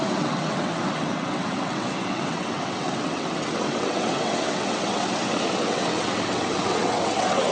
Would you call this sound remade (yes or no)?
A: yes